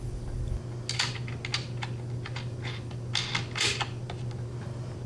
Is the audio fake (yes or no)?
no